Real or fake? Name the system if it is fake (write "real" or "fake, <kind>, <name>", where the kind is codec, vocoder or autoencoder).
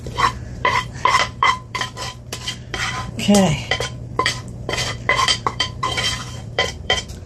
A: fake, vocoder, BigVGAN v2